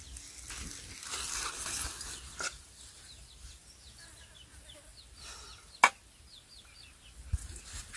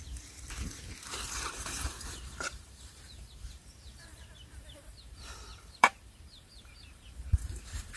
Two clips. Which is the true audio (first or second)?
first